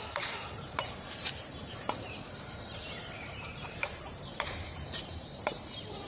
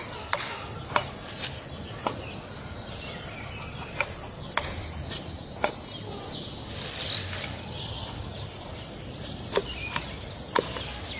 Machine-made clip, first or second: first